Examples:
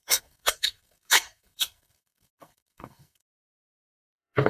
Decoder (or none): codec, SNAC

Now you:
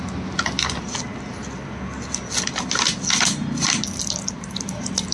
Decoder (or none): none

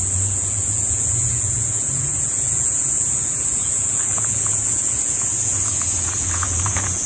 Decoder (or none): vocoder, Vocos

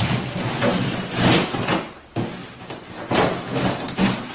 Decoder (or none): none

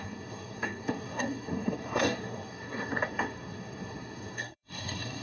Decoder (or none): codec, SNAC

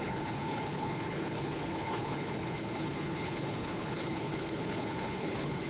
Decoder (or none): codec, HILCodec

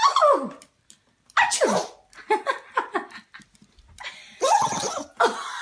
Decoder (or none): none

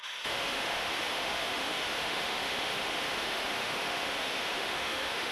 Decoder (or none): autoencoder, DAC-VAE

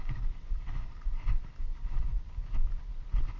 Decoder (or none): vocoder, BigVGAN v2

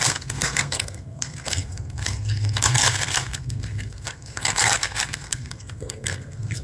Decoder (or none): codec, SNAC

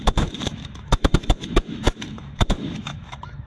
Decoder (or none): autoencoder, DAC-VAE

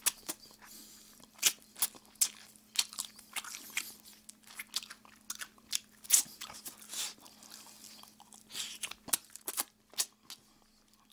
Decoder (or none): none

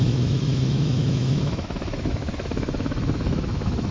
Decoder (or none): autoencoder, DAC-VAE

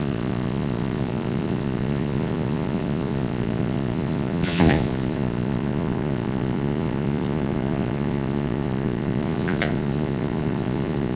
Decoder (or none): vocoder, Vocos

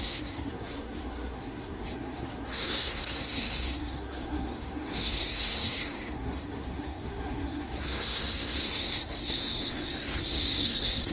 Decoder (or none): codec, SNAC